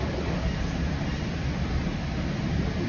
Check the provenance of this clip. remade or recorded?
remade